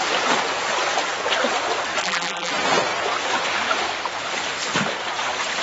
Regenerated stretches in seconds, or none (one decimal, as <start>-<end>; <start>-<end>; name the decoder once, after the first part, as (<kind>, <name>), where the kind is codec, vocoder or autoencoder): 2.0-2.5 (vocoder, BigVGAN v2)

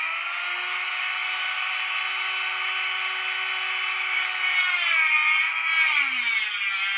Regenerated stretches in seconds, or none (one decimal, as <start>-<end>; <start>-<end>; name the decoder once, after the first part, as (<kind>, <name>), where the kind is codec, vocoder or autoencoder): none

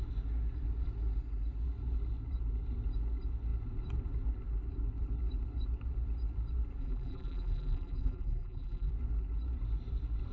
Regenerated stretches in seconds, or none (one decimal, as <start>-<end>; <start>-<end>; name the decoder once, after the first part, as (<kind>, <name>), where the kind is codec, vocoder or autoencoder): 6.8-8.9 (vocoder, BigVGAN v2)

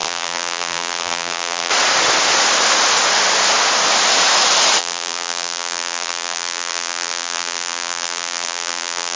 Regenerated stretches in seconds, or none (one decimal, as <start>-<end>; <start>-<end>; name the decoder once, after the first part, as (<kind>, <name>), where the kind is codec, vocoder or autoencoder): 0.0-1.7 (vocoder, BigVGAN v2); 4.8-9.2